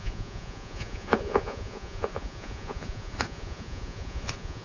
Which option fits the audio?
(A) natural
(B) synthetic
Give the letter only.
B